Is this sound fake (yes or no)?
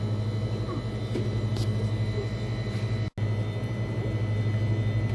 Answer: no